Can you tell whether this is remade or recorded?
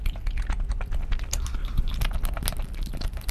recorded